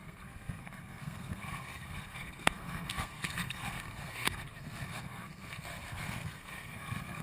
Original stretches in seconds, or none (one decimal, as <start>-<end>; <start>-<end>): none